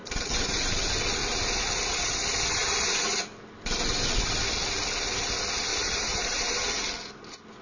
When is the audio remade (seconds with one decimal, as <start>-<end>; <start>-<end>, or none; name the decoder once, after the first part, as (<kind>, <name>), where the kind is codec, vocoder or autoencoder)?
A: 0.0-0.7 (vocoder, BigVGAN v2); 2.6-3.2; 5.7-6.6